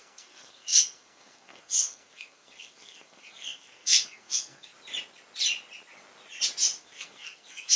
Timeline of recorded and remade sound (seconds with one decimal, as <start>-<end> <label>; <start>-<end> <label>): 0.0-4.7 remade; 4.7-6.8 recorded; 6.8-7.8 remade